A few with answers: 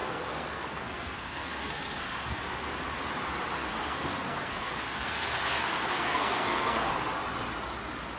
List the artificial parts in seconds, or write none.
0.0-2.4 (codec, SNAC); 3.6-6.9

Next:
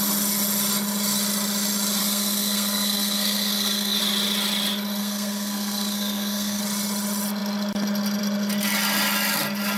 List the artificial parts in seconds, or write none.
2.0-4.0 (codec, SNAC); 5.0-6.6

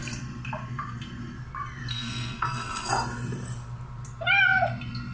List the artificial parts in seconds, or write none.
1.9-2.9 (codec, SNAC)

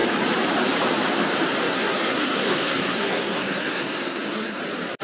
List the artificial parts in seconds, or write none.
1.6-4.6 (codec, SNAC)